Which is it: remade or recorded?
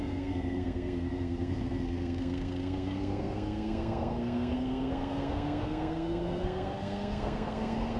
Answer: remade